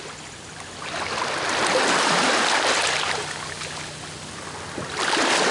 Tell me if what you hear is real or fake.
real